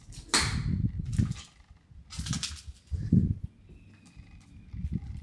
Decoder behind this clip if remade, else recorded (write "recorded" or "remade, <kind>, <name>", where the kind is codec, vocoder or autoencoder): recorded